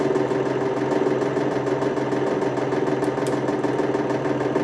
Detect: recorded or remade recorded